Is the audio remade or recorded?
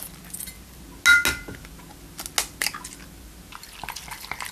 recorded